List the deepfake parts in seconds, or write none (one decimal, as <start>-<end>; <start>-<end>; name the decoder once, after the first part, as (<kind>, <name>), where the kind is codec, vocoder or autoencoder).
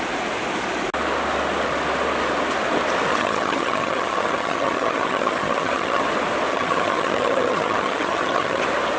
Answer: 3.1-6.0 (vocoder, HiFi-GAN); 6.5-8.6